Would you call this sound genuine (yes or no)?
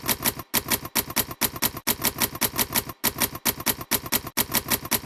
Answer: yes